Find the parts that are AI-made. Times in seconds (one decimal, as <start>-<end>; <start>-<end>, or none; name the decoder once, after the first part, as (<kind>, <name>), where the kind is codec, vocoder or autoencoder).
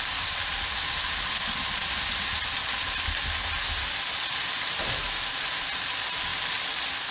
none